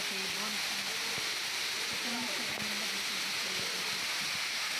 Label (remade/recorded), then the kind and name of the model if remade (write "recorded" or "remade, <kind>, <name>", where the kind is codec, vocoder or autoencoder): recorded